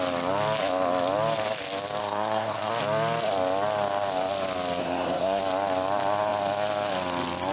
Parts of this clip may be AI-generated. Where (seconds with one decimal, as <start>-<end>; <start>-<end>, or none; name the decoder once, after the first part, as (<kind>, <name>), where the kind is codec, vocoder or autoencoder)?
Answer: 2.0-2.7 (codec, SNAC); 4.8-5.4